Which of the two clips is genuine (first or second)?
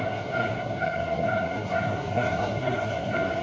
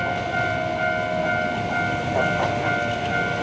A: second